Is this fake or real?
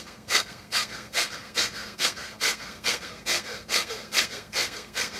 fake